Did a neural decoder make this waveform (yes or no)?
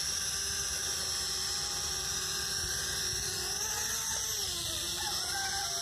no